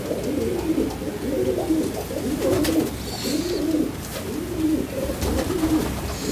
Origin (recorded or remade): recorded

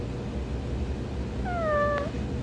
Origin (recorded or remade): recorded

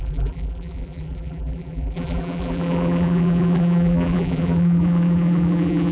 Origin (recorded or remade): remade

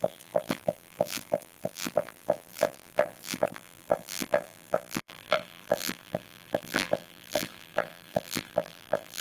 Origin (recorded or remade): remade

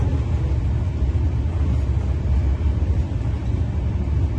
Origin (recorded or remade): recorded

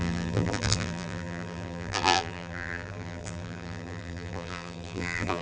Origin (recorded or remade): remade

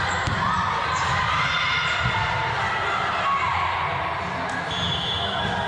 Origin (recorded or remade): recorded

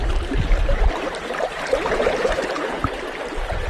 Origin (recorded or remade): remade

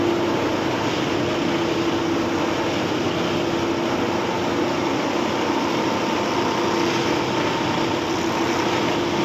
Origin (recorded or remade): recorded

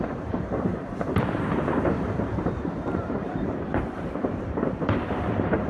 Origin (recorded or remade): remade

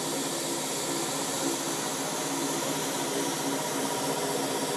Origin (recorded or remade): recorded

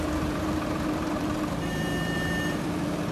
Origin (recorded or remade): remade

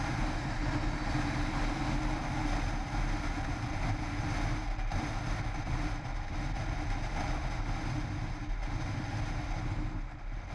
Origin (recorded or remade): recorded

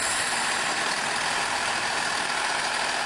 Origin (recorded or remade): remade